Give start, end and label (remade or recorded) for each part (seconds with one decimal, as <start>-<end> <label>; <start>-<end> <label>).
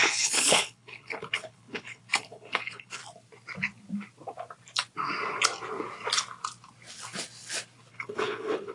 0.0-3.0 remade; 3.0-7.9 recorded; 7.9-8.7 remade